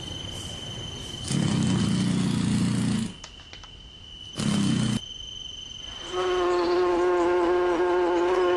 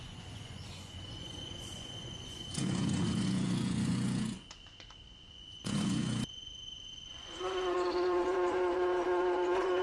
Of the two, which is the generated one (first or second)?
second